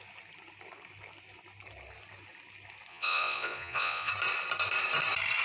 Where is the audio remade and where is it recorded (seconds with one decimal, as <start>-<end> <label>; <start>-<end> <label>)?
0.0-2.9 recorded; 2.9-4.1 remade; 4.1-5.4 recorded